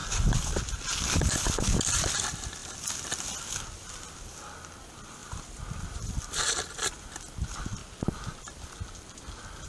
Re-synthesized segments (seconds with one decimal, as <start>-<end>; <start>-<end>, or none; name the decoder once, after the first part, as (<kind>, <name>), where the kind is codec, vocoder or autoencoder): 2.2-2.6 (vocoder, BigVGAN v2); 4.8-7.8; 9.2-9.7